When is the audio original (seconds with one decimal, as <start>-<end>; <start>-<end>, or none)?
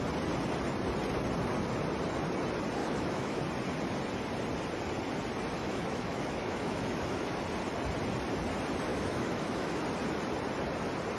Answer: 0.0-2.8; 3.4-5.6; 7.4-8.9; 9.8-11.2